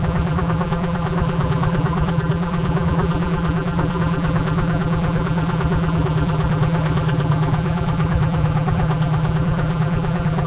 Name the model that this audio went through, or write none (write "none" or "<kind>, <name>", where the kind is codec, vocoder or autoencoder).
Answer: vocoder, BigVGAN v2